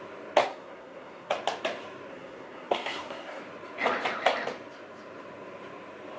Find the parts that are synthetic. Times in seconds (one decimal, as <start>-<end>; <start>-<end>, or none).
0.4-1.3; 2.1-3.4